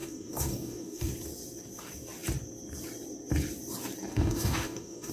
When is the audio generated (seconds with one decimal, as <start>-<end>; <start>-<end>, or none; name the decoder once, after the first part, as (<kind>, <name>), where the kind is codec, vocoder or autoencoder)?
0.0-1.1 (codec, DAC); 4.1-5.1